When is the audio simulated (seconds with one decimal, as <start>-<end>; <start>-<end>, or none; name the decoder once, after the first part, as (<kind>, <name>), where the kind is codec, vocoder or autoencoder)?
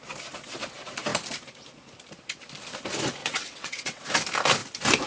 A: 3.2-4.0 (vocoder, WaveNeXt)